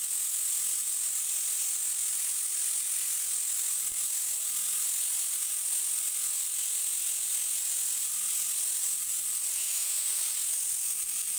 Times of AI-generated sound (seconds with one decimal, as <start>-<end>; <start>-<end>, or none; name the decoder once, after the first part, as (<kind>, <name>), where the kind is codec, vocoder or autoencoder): 9.6-10.2 (autoencoder, DAC-VAE)